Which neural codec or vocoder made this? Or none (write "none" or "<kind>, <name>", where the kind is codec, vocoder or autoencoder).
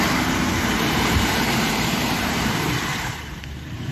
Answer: vocoder, BigVGAN v2